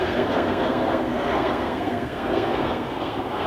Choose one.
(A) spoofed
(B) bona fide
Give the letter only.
A